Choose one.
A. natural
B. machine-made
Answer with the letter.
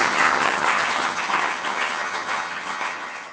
B